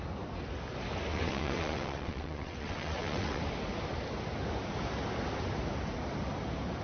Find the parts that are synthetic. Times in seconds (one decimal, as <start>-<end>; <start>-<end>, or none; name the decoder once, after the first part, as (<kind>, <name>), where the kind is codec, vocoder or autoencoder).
1.1-3.4 (vocoder, WaveNeXt)